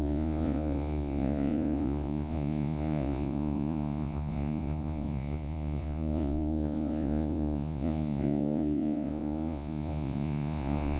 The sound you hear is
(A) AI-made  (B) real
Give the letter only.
A